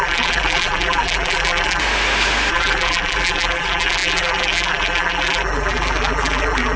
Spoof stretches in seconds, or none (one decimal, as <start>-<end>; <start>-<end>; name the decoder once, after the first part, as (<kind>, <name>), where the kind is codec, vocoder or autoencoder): 0.0-1.8 (vocoder, BigVGAN v2); 2.5-6.8